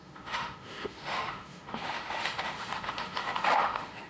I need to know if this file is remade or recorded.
remade